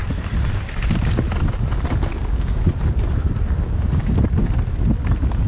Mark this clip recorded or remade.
recorded